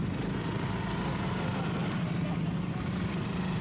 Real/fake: real